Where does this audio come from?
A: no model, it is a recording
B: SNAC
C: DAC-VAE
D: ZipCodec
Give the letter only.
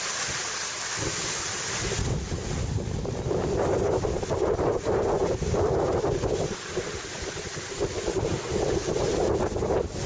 A